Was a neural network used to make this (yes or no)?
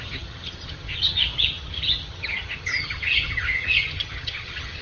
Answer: yes